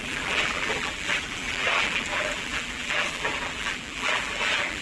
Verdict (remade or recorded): remade